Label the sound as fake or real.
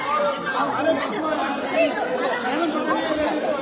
real